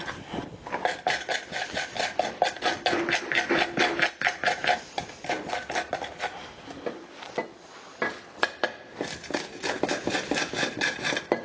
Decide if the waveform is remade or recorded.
recorded